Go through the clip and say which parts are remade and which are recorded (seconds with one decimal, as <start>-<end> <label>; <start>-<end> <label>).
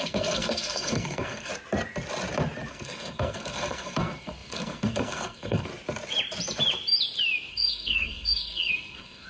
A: 0.0-1.5 remade; 1.5-2.7 recorded; 2.7-5.7 remade; 5.7-7.5 recorded; 7.5-9.3 remade